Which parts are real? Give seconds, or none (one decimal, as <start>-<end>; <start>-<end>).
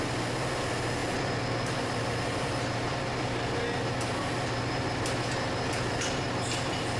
0.0-7.0